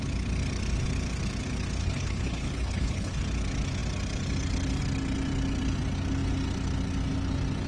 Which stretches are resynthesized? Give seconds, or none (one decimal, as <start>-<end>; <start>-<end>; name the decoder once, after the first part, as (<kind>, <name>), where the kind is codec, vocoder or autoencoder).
1.8-3.2 (codec, HILCodec)